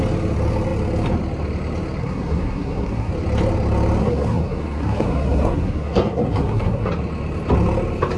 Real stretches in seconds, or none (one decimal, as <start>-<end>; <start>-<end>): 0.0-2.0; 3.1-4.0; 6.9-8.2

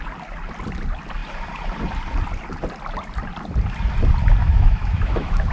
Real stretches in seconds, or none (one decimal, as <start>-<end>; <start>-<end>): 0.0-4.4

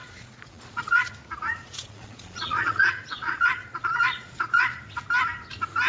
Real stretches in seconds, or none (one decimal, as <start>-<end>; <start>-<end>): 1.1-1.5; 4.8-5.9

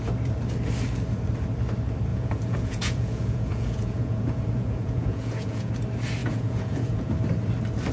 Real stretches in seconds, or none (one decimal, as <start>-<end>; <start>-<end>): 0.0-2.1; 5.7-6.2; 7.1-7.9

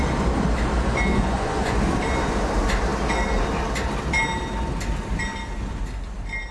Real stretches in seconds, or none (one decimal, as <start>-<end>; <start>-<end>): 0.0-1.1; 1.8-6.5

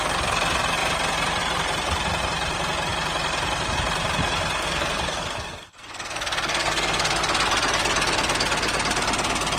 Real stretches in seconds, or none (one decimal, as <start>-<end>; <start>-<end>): 0.0-4.6; 7.2-9.6

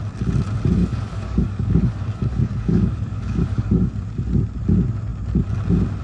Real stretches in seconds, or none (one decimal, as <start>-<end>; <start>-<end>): 0.0-0.8; 3.9-6.0

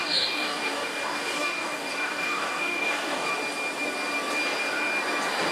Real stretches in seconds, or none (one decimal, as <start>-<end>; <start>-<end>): 3.3-5.5